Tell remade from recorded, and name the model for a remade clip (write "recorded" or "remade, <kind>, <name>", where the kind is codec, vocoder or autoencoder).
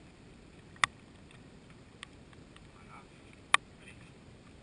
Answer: recorded